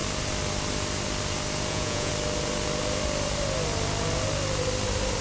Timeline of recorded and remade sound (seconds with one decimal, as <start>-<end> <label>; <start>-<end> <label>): 0.0-1.7 recorded; 1.7-2.1 remade; 2.1-5.2 recorded